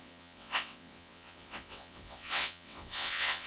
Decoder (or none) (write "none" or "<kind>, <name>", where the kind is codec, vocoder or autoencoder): vocoder, WaveNeXt